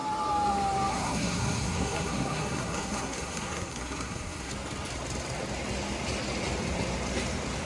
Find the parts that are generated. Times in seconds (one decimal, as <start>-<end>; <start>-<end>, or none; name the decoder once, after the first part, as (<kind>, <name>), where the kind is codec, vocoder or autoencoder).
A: 0.9-4.5 (codec, SNAC)